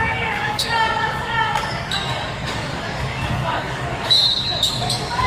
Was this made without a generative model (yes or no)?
no